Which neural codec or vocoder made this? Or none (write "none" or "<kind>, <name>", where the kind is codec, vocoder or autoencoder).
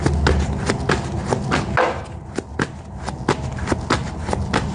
none